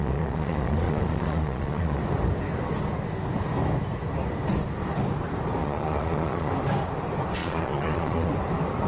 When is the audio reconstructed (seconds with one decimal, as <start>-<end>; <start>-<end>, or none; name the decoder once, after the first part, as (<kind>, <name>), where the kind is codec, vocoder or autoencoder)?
0.0-2.0 (vocoder, Vocos); 5.6-6.5; 7.4-8.3